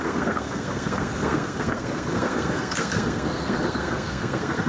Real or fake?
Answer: fake